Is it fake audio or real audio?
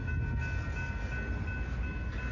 real